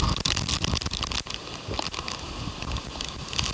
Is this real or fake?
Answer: real